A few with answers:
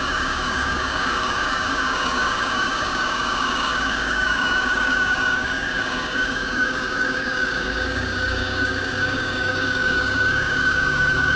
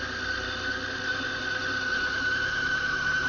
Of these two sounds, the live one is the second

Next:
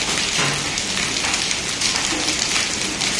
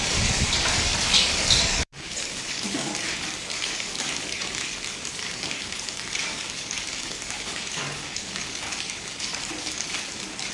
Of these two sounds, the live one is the first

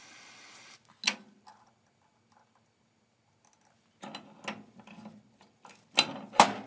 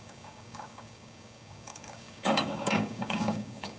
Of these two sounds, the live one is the first